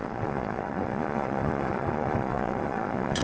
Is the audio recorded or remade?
remade